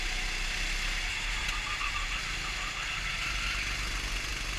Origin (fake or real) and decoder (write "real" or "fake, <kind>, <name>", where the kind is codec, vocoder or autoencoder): real